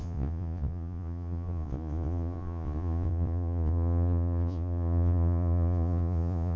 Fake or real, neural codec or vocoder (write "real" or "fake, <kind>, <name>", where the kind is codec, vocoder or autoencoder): fake, vocoder, Vocos